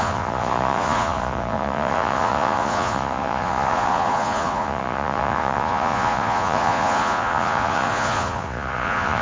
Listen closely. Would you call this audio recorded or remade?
remade